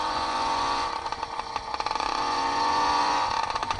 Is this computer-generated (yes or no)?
yes